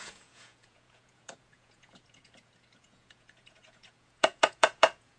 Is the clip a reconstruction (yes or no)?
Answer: yes